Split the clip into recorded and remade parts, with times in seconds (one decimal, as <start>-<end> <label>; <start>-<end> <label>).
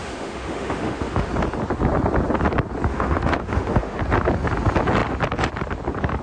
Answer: 0.0-1.3 remade; 1.3-2.9 recorded; 2.9-4.0 remade; 4.0-6.2 recorded